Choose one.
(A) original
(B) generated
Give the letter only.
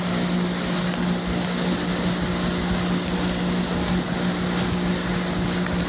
A